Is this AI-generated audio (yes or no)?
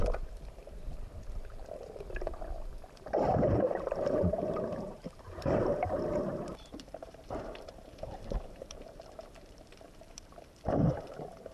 yes